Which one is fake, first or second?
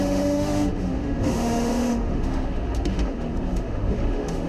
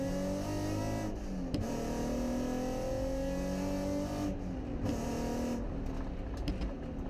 first